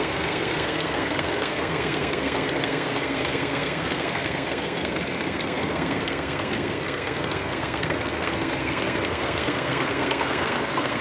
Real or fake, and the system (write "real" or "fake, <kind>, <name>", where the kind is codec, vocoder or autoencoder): fake, codec, SNAC